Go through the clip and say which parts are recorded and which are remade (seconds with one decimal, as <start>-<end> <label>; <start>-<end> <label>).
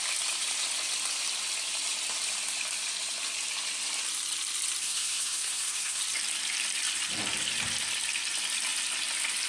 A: 0.0-4.8 recorded; 4.8-6.0 remade; 6.0-9.5 recorded